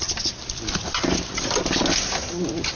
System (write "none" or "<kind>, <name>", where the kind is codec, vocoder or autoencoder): none